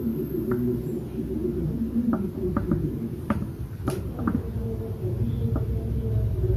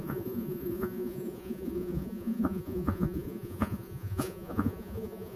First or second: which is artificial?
second